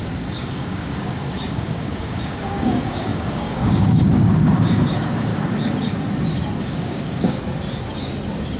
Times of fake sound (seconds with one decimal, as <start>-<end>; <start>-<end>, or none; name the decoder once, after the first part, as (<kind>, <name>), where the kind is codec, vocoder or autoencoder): 0.0-5.3 (codec, DAC); 6.6-7.4